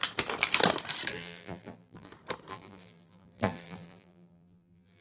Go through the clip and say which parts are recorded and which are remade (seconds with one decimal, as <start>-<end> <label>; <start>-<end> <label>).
0.0-1.1 recorded; 1.1-2.1 remade; 2.1-2.5 recorded; 2.5-5.0 remade